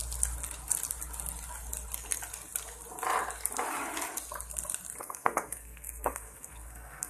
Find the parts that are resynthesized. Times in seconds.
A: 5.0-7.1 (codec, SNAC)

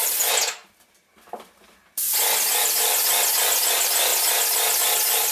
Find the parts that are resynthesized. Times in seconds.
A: none